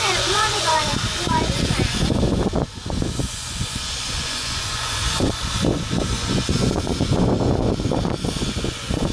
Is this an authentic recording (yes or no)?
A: no